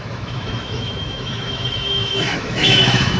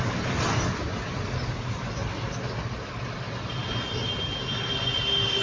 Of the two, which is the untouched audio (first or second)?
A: second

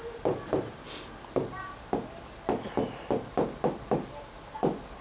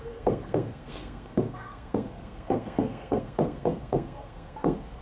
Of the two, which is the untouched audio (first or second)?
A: first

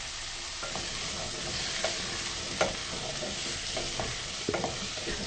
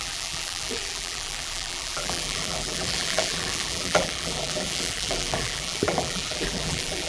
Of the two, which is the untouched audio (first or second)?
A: first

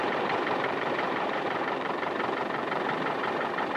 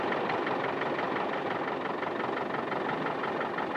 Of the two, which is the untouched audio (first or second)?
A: second